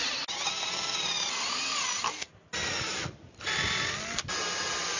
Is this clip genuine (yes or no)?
yes